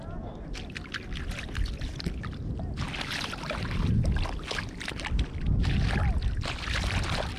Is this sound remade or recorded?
recorded